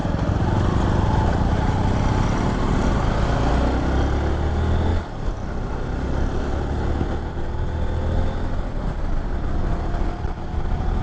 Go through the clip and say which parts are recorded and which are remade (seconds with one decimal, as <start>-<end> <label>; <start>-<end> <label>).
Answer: 0.0-11.0 recorded